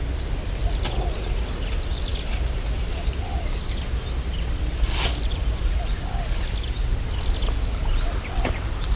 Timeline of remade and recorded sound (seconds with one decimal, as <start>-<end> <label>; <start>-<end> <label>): 0.0-2.1 recorded; 2.1-3.6 remade; 3.6-4.0 recorded; 4.0-5.5 remade; 5.5-9.0 recorded